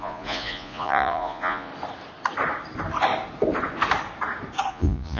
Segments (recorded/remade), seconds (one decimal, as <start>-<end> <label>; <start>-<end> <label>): 0.0-1.7 remade; 1.7-4.7 recorded; 4.7-5.2 remade